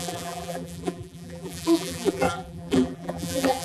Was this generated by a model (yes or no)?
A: yes